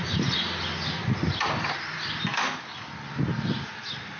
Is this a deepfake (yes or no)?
no